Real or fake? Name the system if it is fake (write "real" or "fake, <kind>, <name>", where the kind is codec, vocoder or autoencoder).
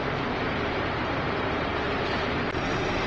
fake, vocoder, BigVGAN v2